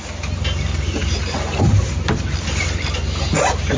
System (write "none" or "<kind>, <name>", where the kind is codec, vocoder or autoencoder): none